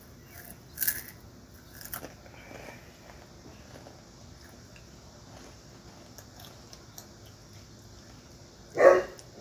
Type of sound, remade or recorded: recorded